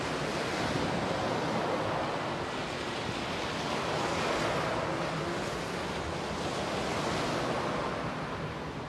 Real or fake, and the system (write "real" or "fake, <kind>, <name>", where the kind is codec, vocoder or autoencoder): real